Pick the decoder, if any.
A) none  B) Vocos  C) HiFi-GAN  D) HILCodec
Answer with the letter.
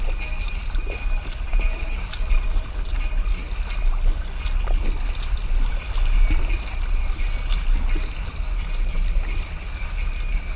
A